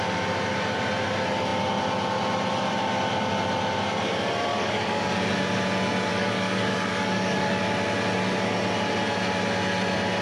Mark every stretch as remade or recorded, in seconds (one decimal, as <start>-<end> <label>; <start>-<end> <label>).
0.0-4.5 recorded; 4.5-5.3 remade; 5.3-6.1 recorded; 6.1-7.6 remade; 7.6-10.2 recorded